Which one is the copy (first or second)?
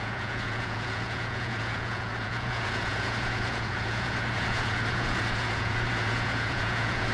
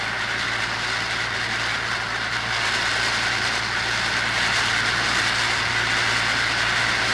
first